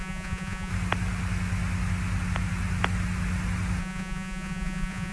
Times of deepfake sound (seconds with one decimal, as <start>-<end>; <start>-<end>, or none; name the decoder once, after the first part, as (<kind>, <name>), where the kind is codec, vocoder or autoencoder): 0.0-0.7 (vocoder, Vocos); 3.8-5.1